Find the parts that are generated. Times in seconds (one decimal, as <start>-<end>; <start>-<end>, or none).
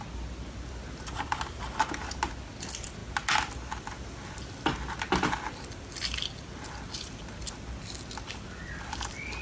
none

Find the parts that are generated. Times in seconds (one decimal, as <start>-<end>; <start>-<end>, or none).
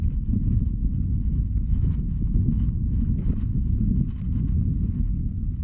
none